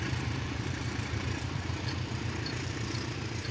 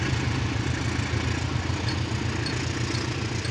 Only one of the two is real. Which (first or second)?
second